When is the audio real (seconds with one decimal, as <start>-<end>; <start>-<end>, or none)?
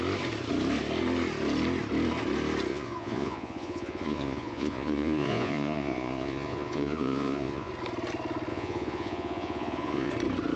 0.0-2.7; 7.7-8.5; 10.1-10.6